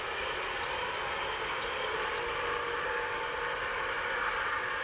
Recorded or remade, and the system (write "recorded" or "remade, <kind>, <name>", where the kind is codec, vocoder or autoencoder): recorded